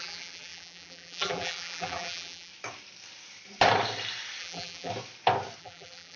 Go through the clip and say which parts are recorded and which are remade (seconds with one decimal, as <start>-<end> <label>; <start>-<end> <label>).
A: 0.0-2.5 remade; 2.5-4.4 recorded; 4.4-4.9 remade; 4.9-5.6 recorded; 5.6-6.2 remade